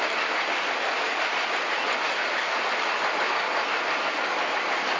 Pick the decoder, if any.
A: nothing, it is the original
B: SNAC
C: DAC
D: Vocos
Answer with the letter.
A